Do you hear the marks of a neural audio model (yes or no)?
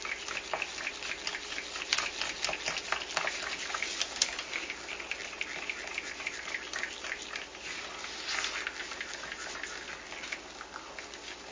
no